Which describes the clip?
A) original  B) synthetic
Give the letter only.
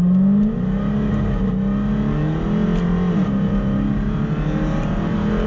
A